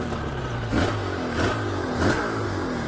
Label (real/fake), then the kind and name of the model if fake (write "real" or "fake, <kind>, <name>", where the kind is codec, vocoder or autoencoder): real